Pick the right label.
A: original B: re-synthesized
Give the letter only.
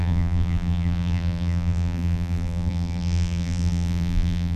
B